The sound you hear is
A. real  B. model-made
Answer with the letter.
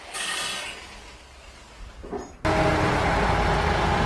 A